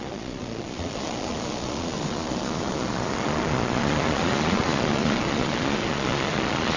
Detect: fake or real fake